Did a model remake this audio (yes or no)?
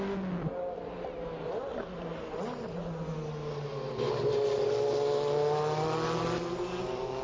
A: no